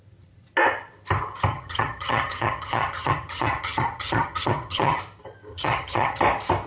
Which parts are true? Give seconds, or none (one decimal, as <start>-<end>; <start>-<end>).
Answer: 0.0-1.5; 5.0-5.5; 6.2-6.7